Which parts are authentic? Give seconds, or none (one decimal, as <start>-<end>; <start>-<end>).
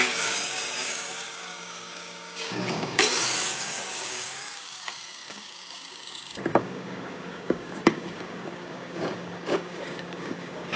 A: none